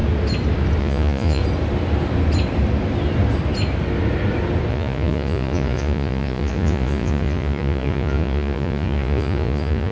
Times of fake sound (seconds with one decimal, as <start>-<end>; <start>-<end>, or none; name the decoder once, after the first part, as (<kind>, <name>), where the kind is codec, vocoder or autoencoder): 0.8-1.4 (vocoder, Vocos); 4.7-9.9